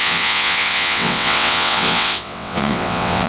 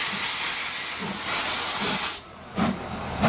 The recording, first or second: second